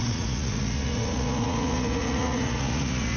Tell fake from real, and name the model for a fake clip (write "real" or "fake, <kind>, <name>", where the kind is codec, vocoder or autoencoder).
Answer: fake, vocoder, Vocos